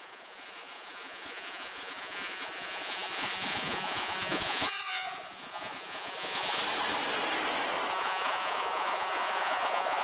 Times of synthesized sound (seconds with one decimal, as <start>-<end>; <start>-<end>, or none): 0.0-6.6; 7.9-10.0